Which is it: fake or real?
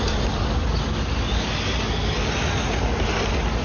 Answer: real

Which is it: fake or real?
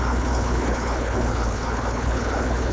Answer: fake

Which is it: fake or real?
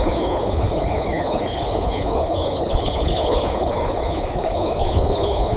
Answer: fake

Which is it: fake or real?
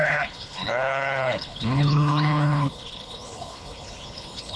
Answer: fake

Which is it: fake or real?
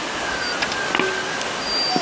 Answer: real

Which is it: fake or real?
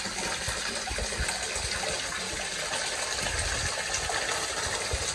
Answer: real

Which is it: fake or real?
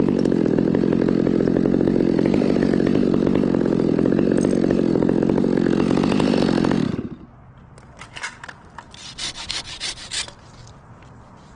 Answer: real